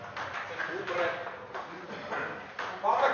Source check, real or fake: real